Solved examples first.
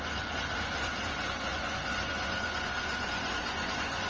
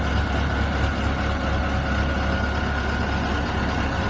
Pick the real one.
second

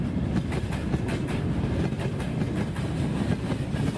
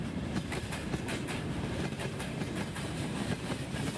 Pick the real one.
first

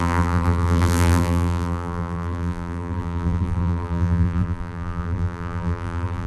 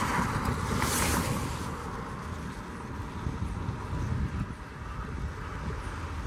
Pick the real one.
second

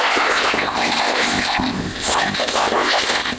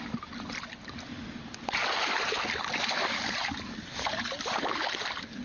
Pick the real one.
second